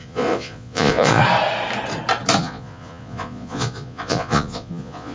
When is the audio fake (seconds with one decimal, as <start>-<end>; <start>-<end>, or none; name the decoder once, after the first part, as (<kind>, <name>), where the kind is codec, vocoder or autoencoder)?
0.0-1.2 (vocoder, Vocos); 2.4-5.1